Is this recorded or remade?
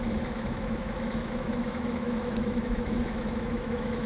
remade